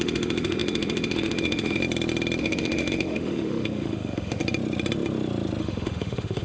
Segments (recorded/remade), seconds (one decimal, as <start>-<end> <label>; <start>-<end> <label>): 0.0-1.8 remade; 1.8-2.4 recorded; 2.4-4.4 remade; 4.4-5.6 recorded; 5.6-6.4 remade